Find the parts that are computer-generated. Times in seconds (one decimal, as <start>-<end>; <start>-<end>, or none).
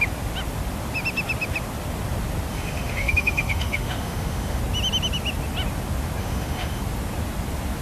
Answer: 2.5-4.6; 6.2-6.8